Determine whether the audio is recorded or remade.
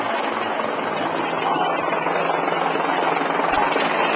recorded